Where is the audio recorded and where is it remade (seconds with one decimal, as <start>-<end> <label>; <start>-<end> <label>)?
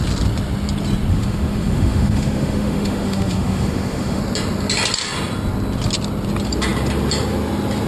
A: 0.0-1.1 recorded; 1.1-4.2 remade; 4.2-7.9 recorded